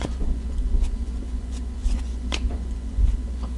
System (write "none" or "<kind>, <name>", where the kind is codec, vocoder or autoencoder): vocoder, Vocos